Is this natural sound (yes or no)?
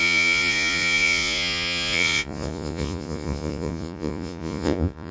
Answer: no